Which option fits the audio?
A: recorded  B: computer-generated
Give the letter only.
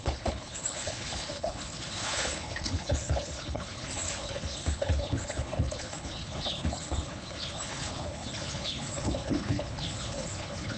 B